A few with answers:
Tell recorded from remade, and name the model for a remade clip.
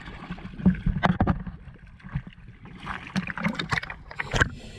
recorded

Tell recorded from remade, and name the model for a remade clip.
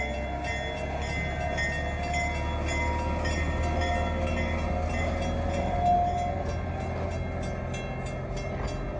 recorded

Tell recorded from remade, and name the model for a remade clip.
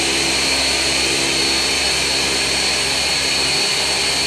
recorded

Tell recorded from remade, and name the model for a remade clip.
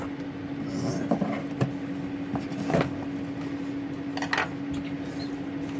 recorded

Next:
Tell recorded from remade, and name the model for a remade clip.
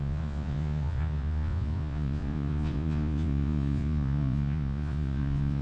remade, vocoder, Vocos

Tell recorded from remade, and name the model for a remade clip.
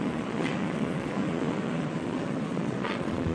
remade, vocoder, Vocos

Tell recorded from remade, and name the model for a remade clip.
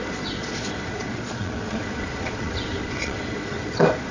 remade, vocoder, Vocos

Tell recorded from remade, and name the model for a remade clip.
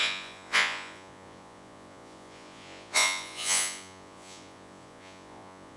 remade, vocoder, Vocos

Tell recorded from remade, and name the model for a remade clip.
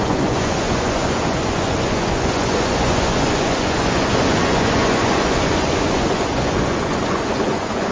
remade, vocoder, Vocos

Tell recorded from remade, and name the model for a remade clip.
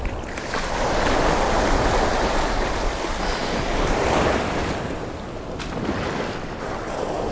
recorded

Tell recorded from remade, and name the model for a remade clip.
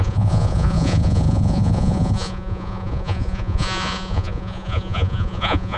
remade, vocoder, Vocos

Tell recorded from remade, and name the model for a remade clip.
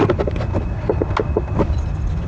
recorded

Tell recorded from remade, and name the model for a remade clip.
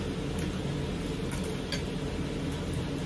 recorded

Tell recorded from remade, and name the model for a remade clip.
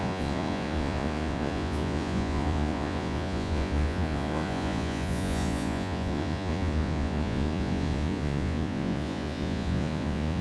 remade, vocoder, Vocos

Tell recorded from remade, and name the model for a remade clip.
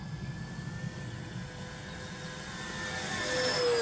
recorded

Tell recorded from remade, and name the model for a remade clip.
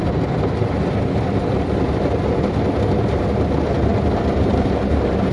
recorded